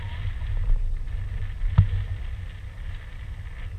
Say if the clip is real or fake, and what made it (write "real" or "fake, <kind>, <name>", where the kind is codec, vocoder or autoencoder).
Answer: real